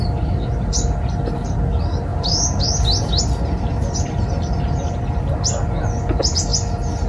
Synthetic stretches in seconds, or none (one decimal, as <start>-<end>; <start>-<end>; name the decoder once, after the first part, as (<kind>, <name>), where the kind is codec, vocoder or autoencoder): 2.1-3.2 (vocoder, BigVGAN v2)